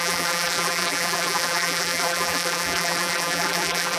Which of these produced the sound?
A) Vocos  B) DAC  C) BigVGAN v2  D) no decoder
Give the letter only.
C